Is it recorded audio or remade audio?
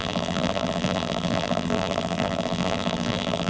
remade